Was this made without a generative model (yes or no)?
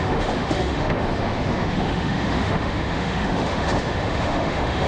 no